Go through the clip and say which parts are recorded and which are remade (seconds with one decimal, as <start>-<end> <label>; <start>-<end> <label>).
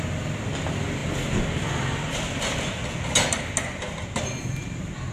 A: 0.0-5.1 recorded